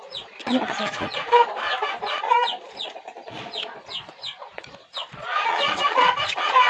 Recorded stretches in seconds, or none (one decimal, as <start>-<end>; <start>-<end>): 1.5-2.1